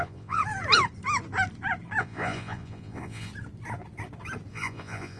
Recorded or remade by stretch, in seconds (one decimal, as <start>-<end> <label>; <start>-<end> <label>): 0.0-0.4 remade; 0.4-2.0 recorded; 2.0-3.3 remade; 3.3-4.5 recorded; 4.5-5.2 remade